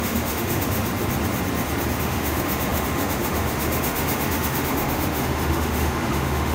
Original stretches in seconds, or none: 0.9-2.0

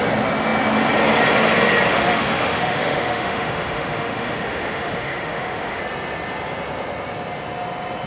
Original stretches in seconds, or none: 0.0-1.9; 5.8-8.1

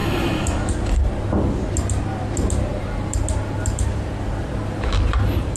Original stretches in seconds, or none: 0.7-5.6

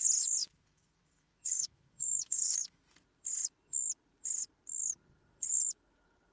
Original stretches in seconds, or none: 0.0-0.4; 2.8-6.3

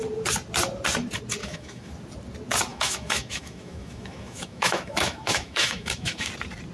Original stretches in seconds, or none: 0.0-1.4; 1.9-2.7; 6.3-6.7

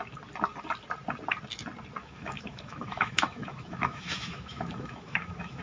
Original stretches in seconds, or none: 0.0-2.0

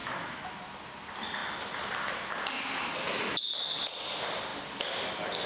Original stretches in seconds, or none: 0.7-5.5

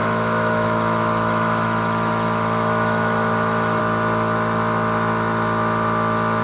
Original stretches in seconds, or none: 3.8-6.4